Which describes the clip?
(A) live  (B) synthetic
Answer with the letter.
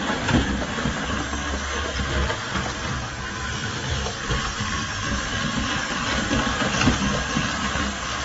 A